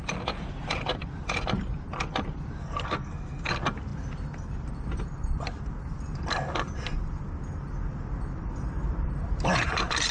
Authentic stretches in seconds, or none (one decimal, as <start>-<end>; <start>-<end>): 0.0-2.6; 3.5-10.1